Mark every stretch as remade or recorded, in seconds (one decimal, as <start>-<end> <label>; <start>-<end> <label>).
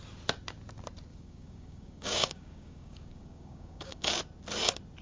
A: 0.0-1.1 recorded; 1.1-4.1 remade; 4.1-5.0 recorded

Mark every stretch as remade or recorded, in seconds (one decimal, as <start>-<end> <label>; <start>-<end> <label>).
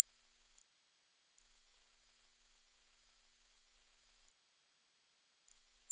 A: 0.0-0.6 remade; 0.6-1.4 recorded; 1.4-4.3 remade; 4.3-5.5 recorded; 5.5-5.9 remade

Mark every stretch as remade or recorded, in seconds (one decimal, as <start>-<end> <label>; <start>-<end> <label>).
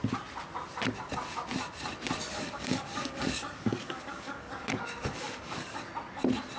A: 0.0-2.3 recorded; 2.3-5.9 remade; 5.9-6.6 recorded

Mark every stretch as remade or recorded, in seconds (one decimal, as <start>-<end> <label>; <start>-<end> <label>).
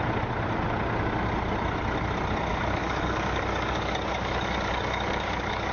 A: 0.0-2.5 recorded; 2.5-5.7 remade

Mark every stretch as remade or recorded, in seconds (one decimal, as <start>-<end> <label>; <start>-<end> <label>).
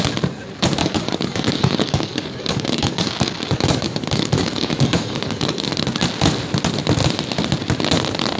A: 0.0-0.8 recorded; 0.8-5.7 remade; 5.7-8.4 recorded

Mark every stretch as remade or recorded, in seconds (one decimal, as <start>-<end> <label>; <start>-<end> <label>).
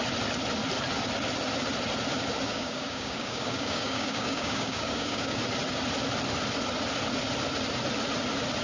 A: 0.0-2.5 recorded; 2.5-5.4 remade; 5.4-8.6 recorded